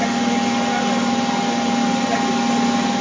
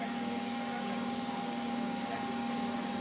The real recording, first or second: first